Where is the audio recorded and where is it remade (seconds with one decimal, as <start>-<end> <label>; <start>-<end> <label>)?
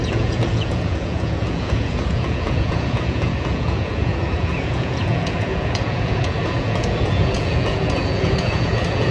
0.0-9.1 remade